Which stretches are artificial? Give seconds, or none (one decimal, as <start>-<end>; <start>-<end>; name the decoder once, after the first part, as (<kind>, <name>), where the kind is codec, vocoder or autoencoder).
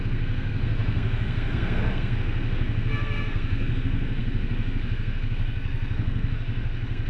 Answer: 0.0-7.1 (codec, SNAC)